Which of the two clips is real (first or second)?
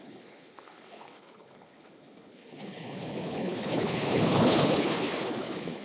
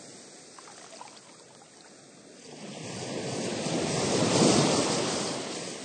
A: second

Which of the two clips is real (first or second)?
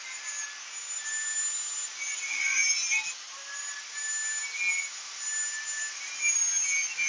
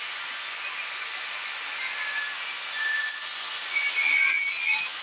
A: first